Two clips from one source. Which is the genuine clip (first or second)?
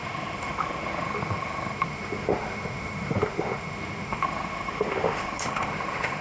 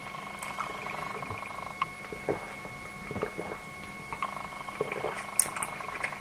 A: second